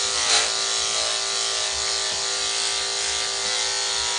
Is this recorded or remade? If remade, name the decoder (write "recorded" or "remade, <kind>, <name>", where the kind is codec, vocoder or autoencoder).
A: recorded